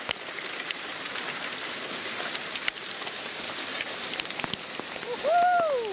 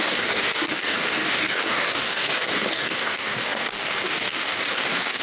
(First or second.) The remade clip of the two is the second